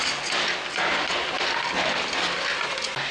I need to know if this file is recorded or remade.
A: recorded